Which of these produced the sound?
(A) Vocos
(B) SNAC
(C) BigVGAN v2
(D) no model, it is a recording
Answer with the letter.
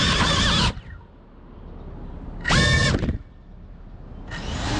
D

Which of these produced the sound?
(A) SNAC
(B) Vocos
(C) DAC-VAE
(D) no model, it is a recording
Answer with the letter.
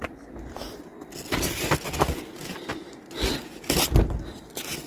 D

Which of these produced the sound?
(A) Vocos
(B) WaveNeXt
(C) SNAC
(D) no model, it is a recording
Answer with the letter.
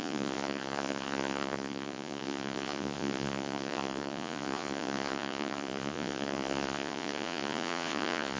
A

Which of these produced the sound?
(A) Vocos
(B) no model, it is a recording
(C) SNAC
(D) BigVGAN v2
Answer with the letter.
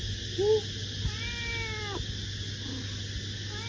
B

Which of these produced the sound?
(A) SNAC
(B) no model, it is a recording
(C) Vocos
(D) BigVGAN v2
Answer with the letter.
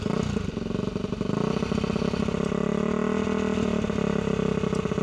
B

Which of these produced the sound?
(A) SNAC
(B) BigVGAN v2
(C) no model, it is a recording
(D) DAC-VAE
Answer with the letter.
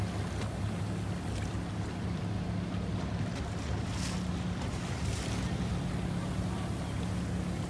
C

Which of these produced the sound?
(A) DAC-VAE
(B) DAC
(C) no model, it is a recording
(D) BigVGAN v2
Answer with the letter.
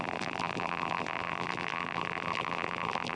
D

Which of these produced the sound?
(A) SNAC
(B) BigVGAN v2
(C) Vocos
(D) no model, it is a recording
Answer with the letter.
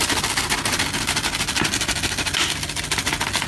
D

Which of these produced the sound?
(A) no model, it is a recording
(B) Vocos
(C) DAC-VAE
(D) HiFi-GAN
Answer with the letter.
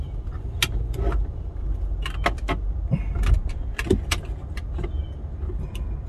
A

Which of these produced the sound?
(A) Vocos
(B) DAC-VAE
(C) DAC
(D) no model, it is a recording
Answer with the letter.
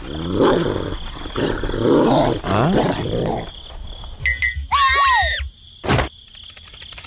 D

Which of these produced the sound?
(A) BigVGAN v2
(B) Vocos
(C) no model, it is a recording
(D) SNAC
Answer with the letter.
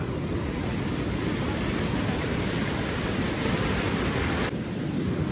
C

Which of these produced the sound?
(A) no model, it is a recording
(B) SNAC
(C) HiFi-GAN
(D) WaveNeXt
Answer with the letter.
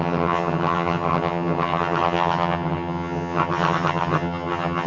C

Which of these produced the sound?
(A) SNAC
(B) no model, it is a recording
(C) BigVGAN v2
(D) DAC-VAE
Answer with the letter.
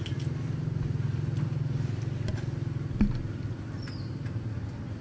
B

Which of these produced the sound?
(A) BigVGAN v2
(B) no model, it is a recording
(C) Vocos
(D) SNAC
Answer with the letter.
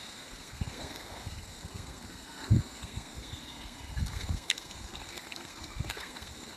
D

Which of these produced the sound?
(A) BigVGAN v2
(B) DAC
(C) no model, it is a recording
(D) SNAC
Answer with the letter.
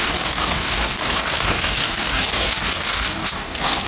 B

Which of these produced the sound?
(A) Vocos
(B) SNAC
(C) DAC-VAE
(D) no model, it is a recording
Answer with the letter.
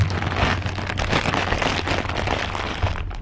D